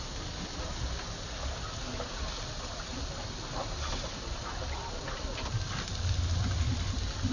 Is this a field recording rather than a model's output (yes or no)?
yes